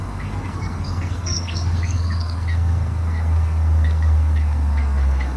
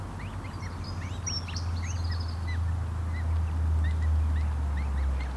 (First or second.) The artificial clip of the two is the first